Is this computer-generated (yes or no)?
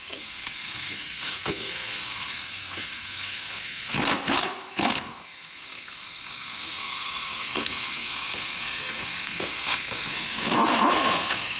yes